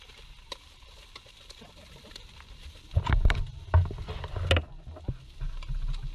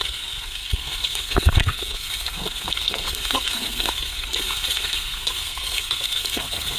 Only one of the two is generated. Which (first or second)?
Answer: second